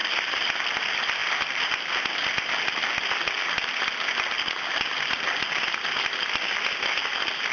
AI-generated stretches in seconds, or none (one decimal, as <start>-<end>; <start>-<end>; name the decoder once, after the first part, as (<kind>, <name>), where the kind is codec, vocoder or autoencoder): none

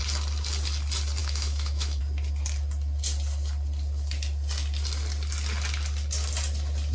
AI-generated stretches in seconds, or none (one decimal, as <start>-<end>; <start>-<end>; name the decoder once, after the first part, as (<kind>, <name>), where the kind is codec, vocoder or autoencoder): 1.2-2.0 (autoencoder, DAC-VAE)

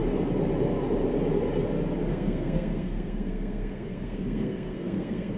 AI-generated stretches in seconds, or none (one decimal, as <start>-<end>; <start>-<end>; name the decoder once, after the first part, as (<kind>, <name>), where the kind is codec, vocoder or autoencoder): 2.1-5.4 (codec, SNAC)

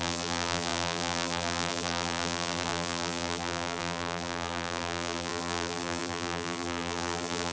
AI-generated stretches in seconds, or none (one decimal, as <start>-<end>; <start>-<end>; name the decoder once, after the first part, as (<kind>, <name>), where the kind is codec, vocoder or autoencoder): 0.0-7.5 (vocoder, BigVGAN v2)